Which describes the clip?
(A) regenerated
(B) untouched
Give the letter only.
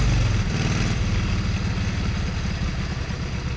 B